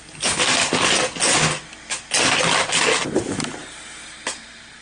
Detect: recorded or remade recorded